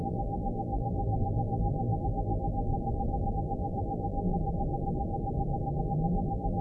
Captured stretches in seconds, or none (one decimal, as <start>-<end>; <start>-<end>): 2.7-3.3; 4.3-5.8